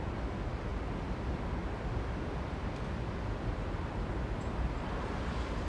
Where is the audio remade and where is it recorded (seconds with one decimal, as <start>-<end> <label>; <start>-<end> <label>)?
0.0-1.6 recorded; 1.6-4.9 remade; 4.9-5.7 recorded

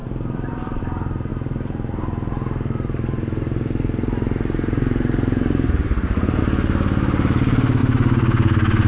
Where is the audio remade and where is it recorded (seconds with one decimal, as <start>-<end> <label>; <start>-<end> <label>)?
0.0-0.8 remade; 0.8-1.3 recorded; 1.3-6.4 remade; 6.4-7.8 recorded; 7.8-8.9 remade